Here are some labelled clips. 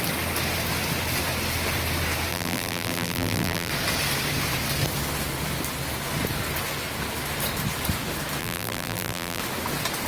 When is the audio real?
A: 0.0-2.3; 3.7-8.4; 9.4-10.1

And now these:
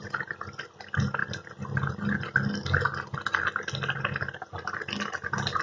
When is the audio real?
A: 0.0-5.6